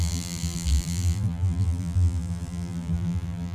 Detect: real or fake fake